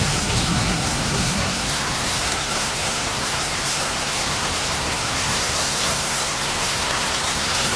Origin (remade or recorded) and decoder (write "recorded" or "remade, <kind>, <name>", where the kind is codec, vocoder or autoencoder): remade, codec, SNAC